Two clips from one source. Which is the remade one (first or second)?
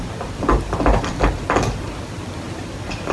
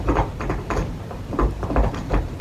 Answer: second